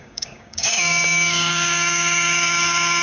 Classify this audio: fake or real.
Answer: fake